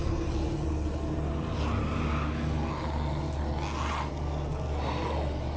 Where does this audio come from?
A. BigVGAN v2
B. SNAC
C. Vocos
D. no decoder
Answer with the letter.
D